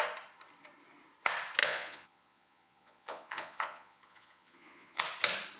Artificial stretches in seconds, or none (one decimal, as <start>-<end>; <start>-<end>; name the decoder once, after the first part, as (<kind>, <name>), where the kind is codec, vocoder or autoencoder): 1.6-5.0 (vocoder, Vocos)